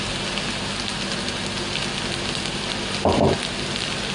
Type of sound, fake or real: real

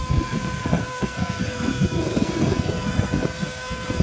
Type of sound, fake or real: fake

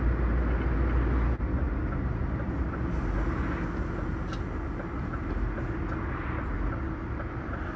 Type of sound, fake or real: real